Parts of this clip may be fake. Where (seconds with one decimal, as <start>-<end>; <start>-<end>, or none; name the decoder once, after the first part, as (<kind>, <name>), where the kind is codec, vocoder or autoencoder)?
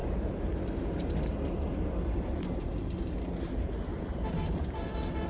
3.9-4.6 (vocoder, BigVGAN v2)